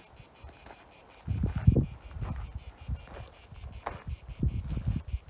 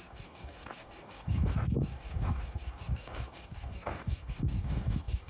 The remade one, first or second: second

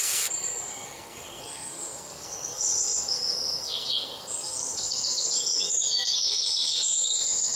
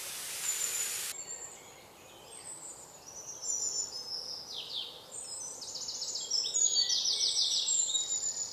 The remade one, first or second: first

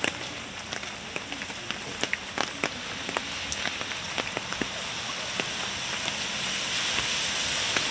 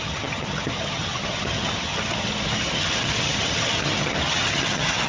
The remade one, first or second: second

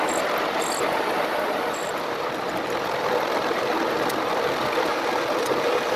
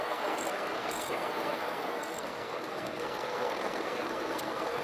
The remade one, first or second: second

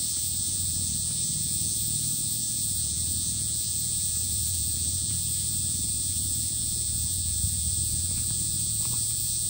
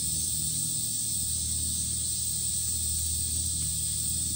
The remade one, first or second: first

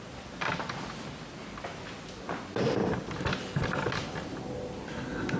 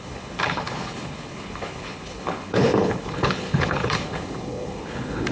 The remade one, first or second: second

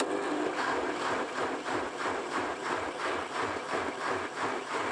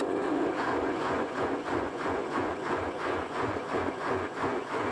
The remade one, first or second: second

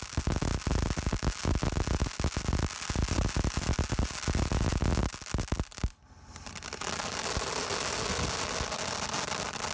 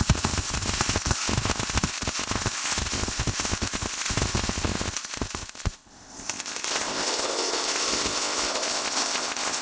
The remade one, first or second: second